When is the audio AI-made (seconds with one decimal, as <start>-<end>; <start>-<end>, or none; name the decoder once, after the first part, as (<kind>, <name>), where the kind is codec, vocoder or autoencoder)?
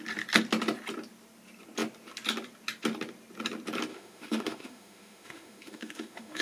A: 3.9-6.4 (autoencoder, DAC-VAE)